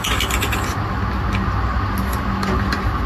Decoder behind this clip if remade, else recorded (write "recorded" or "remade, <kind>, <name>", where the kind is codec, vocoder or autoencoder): recorded